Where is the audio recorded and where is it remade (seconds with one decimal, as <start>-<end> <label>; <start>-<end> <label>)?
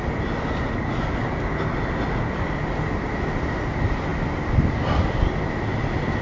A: 0.0-6.2 recorded